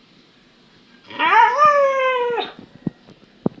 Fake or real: real